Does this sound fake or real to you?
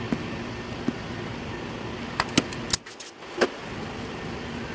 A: real